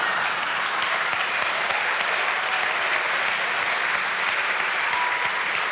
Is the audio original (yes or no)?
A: yes